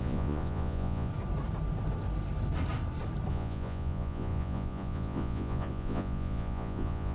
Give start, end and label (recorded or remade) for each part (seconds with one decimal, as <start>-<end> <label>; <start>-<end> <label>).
0.0-1.1 remade; 1.1-3.3 recorded; 3.3-7.1 remade